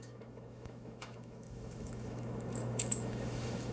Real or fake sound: fake